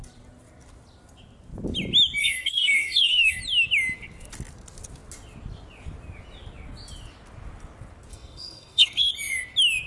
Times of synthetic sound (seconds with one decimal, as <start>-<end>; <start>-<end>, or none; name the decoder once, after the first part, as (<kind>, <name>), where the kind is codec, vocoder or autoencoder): 2.2-3.4 (codec, SNAC); 8.1-9.1